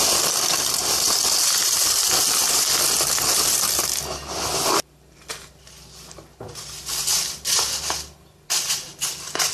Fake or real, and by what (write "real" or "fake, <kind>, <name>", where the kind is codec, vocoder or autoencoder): real